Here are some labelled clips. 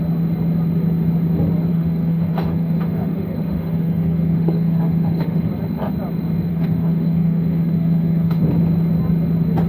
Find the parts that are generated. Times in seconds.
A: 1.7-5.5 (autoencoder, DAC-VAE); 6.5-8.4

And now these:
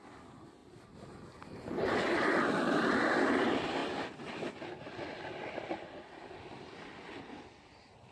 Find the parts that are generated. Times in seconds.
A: none